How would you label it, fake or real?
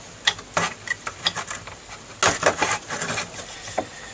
real